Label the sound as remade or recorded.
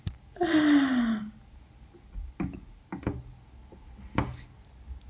recorded